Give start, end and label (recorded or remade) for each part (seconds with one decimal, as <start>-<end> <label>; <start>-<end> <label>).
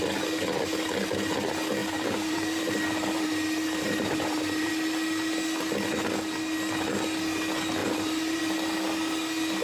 0.0-1.8 recorded; 1.8-4.7 remade; 4.7-7.8 recorded; 7.8-8.4 remade; 8.4-9.6 recorded